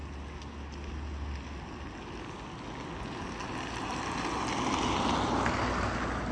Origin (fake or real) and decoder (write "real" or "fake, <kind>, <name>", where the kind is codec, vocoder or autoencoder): real